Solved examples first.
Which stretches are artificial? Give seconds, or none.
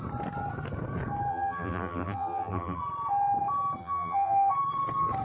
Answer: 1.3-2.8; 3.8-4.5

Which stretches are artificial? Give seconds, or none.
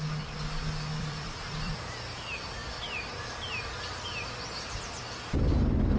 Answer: 1.0-1.7; 2.6-3.3